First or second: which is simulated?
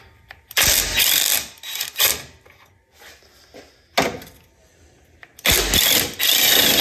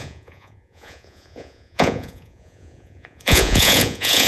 second